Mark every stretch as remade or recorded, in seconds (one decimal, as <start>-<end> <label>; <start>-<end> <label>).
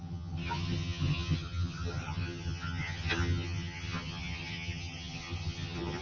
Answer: 0.0-6.0 remade